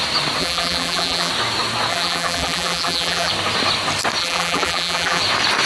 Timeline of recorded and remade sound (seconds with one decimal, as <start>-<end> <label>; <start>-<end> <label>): 0.0-0.4 recorded; 0.4-1.3 remade; 1.3-1.9 recorded; 1.9-3.3 remade; 3.3-4.2 recorded; 4.2-5.2 remade; 5.2-5.7 recorded